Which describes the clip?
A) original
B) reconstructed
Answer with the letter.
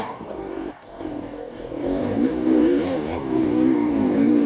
B